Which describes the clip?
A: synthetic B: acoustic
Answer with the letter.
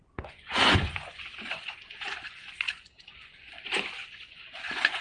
A